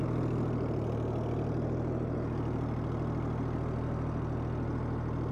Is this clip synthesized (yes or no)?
no